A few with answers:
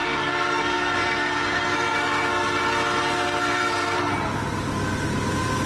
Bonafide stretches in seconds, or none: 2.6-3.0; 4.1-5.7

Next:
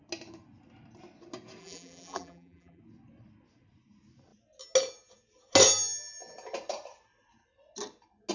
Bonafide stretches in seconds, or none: 0.0-1.6; 2.8-8.3